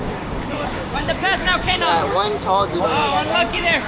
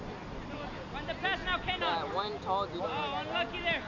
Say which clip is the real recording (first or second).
second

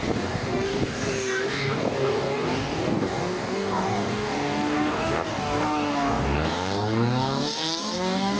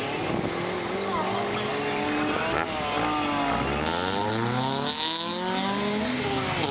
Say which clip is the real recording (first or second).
second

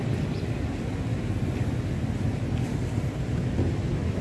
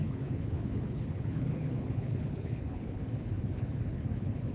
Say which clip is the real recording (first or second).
first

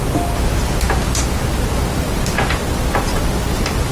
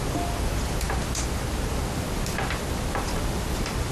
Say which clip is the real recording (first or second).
first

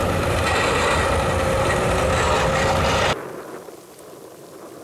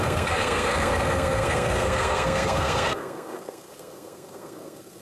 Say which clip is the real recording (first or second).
first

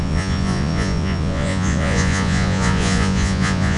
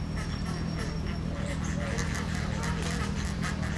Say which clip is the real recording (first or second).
second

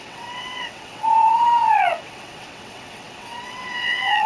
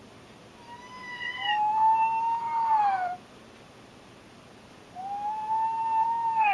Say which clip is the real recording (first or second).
second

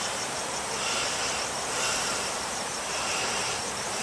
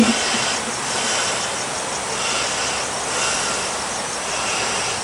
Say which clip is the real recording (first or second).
second